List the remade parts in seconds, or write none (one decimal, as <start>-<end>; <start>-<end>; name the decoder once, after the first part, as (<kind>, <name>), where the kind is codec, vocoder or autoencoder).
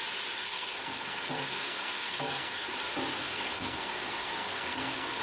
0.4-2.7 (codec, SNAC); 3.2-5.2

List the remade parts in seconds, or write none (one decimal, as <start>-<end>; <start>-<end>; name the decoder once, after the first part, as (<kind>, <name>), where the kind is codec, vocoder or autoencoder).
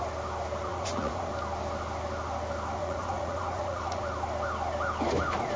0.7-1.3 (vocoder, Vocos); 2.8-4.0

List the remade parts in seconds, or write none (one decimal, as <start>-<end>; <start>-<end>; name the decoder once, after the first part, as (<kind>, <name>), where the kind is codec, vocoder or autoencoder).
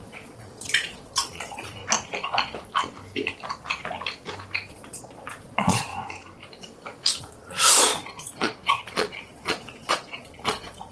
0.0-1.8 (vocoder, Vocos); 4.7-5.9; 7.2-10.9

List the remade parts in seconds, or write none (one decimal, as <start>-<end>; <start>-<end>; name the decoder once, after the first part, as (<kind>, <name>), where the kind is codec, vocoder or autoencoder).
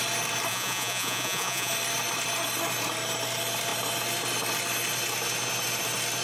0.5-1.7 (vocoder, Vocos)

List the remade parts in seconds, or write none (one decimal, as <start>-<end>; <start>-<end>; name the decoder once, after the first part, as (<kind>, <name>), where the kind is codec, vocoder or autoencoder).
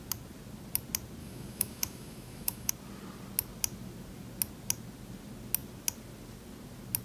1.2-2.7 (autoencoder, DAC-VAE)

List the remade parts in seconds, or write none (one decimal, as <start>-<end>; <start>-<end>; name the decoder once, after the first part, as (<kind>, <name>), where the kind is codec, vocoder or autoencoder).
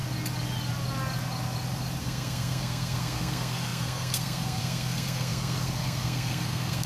2.0-6.9 (codec, SNAC)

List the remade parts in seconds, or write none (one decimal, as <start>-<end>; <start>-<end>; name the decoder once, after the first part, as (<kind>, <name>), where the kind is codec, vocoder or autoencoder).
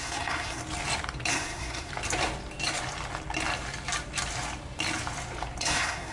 0.0-0.6 (codec, SNAC); 1.3-1.9; 5.6-6.1